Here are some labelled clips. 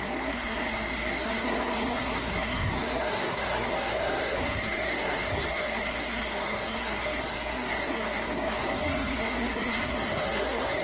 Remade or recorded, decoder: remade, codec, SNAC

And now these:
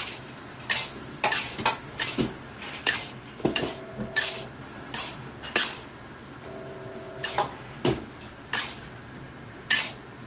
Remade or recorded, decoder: recorded